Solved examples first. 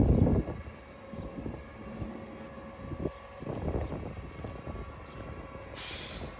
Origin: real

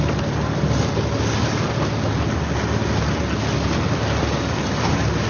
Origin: real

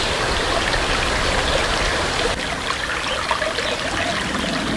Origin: real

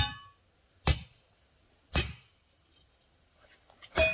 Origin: real